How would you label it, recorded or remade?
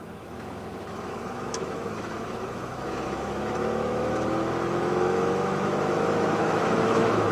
remade